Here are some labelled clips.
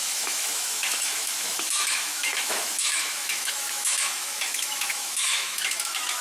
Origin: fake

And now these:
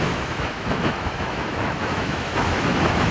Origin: fake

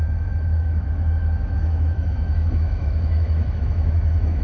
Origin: fake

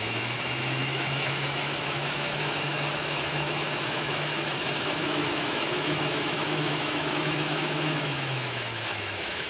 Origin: fake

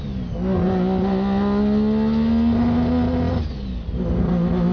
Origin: real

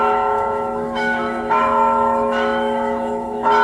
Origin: fake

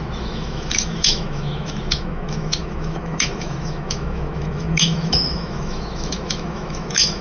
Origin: fake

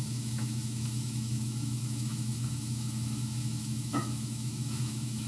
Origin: fake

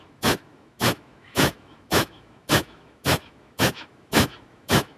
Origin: fake